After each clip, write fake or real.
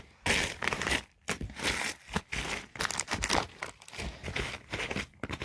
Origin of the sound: real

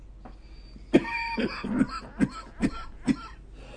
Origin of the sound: real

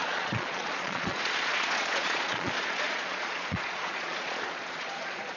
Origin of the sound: fake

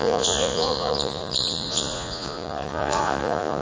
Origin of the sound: fake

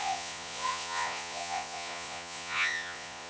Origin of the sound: fake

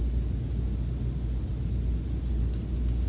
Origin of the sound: real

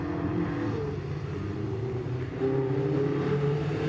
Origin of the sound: real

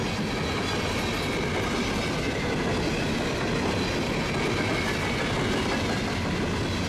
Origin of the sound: real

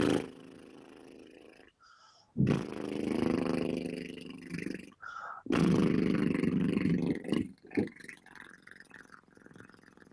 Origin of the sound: real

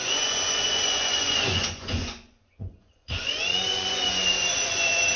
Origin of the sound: fake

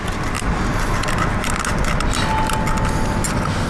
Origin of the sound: real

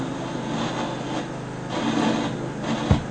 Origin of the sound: real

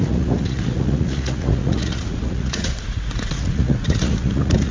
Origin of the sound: fake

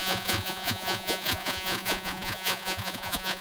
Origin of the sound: fake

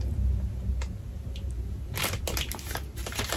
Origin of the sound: real